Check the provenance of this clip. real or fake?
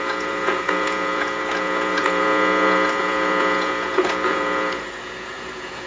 fake